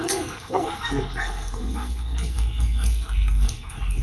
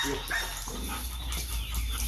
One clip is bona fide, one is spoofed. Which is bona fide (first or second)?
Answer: second